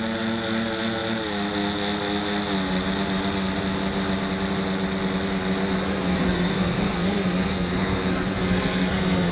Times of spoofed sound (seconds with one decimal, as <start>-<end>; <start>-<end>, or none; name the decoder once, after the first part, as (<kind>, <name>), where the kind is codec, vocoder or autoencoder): 5.6-9.3 (codec, SNAC)